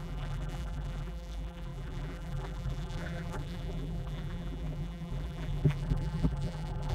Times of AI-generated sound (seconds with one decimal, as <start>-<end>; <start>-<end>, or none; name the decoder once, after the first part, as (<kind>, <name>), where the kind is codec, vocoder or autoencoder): 0.0-6.9 (vocoder, BigVGAN v2)